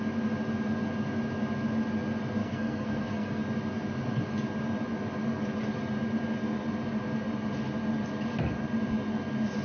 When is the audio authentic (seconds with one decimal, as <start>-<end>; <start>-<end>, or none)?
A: 0.0-2.4; 3.4-9.6